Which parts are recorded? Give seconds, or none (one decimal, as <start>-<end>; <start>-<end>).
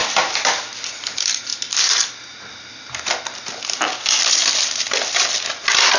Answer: 0.0-6.0